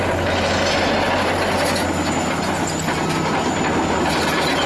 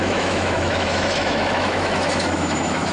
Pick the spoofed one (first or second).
second